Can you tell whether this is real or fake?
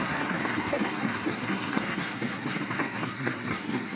fake